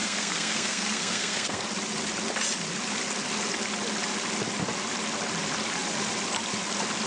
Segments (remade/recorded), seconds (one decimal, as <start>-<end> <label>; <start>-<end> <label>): 0.0-1.6 remade; 1.6-7.1 recorded